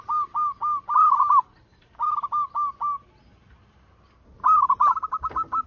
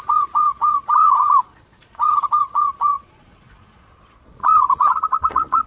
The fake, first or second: second